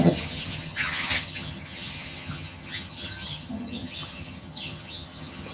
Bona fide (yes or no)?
no